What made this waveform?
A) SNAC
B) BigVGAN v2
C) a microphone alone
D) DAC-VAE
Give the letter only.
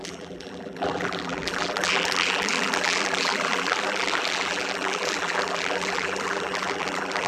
B